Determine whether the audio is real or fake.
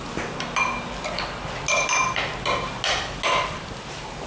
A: real